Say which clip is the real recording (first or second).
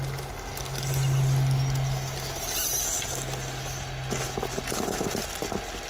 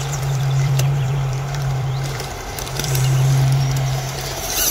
first